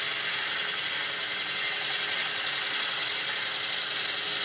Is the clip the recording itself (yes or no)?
yes